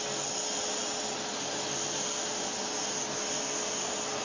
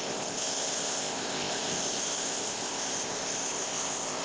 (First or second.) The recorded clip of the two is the first